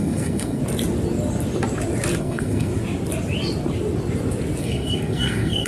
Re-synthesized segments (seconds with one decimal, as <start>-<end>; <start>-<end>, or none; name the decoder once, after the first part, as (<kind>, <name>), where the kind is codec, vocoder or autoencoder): 0.0-0.6 (codec, SNAC); 2.2-2.7; 4.6-5.7